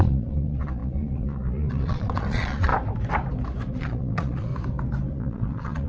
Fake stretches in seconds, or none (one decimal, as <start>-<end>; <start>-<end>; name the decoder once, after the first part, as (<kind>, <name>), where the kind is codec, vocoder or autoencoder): 0.0-2.7 (vocoder, Vocos); 3.8-4.5; 5.1-5.9